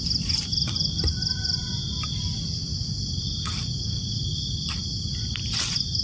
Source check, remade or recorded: recorded